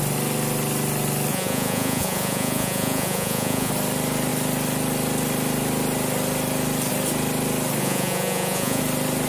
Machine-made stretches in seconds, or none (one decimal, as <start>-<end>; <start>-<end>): 1.3-3.7; 7.8-8.8